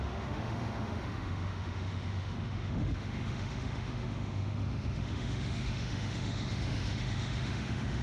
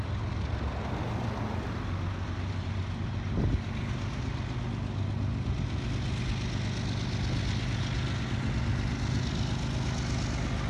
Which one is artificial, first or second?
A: first